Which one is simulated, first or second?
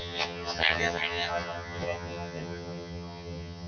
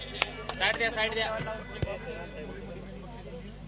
first